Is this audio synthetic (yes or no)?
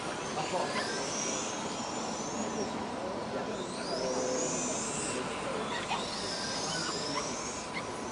no